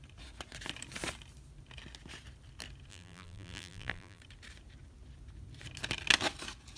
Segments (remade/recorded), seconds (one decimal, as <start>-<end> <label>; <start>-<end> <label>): 0.0-2.9 recorded; 2.9-4.2 remade; 4.2-6.8 recorded